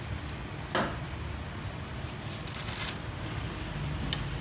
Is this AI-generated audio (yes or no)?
no